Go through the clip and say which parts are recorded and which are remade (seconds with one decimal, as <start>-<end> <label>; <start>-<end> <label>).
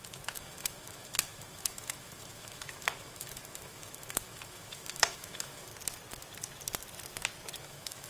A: 0.0-5.7 remade; 5.7-7.6 recorded; 7.6-8.1 remade